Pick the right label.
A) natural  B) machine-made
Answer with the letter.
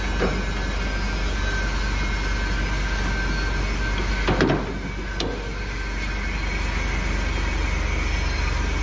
A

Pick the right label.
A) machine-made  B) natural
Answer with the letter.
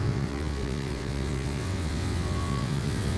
A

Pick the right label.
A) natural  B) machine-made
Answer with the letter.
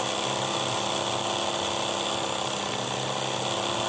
A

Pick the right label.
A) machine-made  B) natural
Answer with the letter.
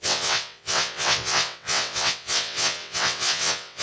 A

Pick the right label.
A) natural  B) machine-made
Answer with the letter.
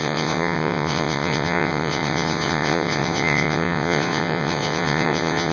B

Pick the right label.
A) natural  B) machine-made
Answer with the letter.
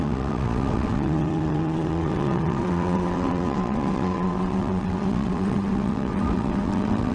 B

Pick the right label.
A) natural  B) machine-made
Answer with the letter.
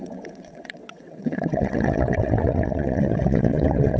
B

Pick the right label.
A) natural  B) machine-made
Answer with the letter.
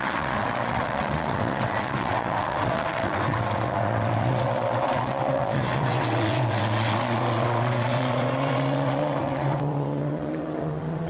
B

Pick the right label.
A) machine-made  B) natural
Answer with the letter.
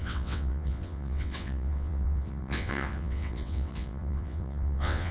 A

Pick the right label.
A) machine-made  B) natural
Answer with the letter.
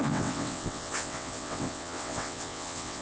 A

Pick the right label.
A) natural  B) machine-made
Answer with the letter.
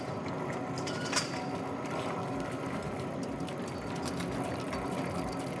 A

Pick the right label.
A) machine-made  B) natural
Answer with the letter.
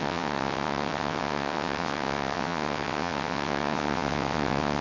A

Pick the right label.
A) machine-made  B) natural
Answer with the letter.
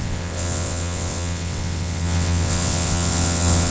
A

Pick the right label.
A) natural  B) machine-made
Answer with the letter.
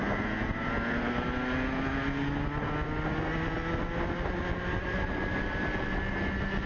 A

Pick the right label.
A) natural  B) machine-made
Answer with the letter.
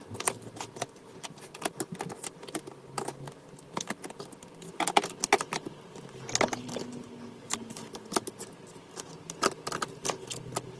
A